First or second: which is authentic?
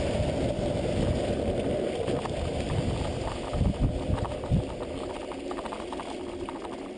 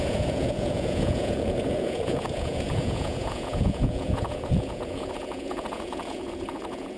first